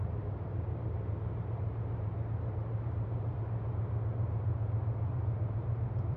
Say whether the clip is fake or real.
fake